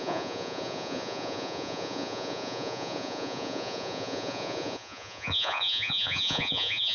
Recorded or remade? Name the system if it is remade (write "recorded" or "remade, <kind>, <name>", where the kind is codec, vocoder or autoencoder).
remade, vocoder, Vocos